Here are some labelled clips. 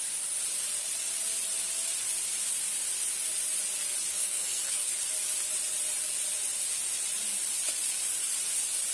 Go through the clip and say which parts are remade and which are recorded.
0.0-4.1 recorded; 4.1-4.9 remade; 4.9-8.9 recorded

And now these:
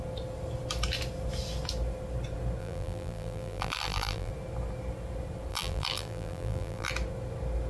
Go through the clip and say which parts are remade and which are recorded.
0.0-2.6 recorded; 2.6-4.3 remade; 4.3-5.5 recorded; 5.5-6.9 remade; 6.9-7.7 recorded

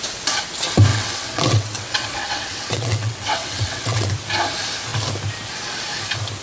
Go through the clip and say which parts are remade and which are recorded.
0.0-0.9 recorded; 0.9-4.1 remade; 4.1-6.4 recorded

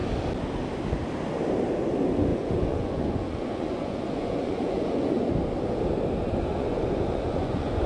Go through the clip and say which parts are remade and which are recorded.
0.0-2.3 recorded; 2.3-5.3 remade; 5.3-6.5 recorded; 6.5-7.9 remade

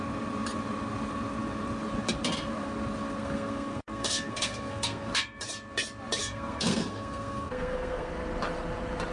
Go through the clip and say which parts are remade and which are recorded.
0.0-3.2 recorded; 3.2-5.1 remade; 5.1-6.2 recorded; 6.2-8.1 remade; 8.1-9.1 recorded